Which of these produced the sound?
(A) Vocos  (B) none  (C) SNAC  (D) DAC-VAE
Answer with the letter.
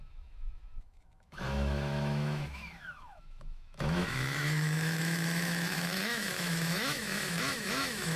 D